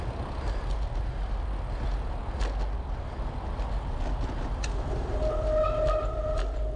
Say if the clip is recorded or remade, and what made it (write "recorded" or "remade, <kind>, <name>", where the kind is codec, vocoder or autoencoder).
recorded